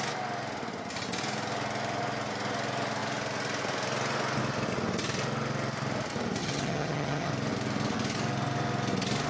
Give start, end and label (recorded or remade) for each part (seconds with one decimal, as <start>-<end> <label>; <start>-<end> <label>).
0.0-6.4 recorded; 6.4-7.3 remade; 7.3-9.3 recorded